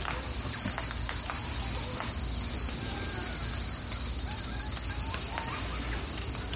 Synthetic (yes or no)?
no